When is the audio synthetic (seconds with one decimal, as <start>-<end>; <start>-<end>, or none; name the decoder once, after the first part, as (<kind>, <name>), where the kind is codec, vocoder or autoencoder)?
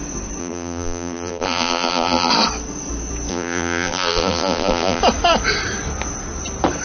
0.4-2.3 (vocoder, BigVGAN v2); 3.3-5.0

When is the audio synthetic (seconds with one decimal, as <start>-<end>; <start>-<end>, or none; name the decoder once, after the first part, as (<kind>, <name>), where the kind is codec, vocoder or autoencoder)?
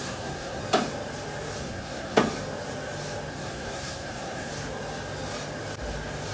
0.0-0.6 (codec, SNAC); 1.6-2.2; 3.3-4.5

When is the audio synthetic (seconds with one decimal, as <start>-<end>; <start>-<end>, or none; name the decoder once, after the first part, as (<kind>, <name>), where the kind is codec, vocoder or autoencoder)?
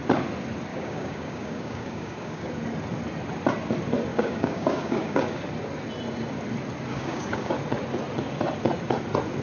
0.7-2.5 (codec, DAC); 4.1-5.4; 6.9-7.5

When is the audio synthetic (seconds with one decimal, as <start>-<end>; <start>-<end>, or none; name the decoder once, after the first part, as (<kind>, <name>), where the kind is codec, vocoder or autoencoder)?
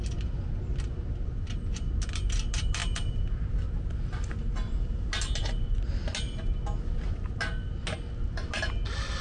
none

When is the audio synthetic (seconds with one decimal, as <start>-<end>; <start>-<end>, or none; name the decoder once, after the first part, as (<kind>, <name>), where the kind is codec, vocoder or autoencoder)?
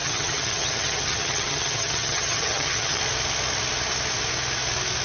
0.0-3.0 (vocoder, HiFi-GAN)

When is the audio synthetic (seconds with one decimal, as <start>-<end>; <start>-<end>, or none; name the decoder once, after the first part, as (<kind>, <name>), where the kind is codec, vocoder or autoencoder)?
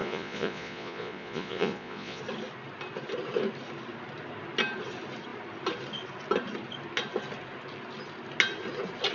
0.0-2.2 (vocoder, Vocos)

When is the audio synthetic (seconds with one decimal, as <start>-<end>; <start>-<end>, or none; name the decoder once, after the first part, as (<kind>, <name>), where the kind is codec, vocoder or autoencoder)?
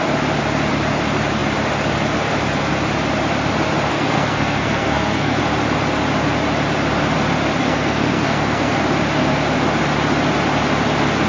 3.9-5.4 (codec, SNAC); 7.6-8.8